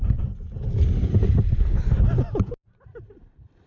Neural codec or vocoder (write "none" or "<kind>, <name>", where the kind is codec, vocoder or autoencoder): none